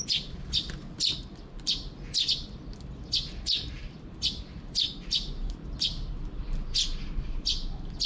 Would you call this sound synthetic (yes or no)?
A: no